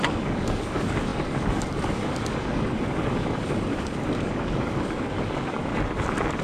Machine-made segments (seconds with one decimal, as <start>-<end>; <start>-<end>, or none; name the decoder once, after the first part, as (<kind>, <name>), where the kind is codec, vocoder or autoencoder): 0.0-5.7 (codec, DAC)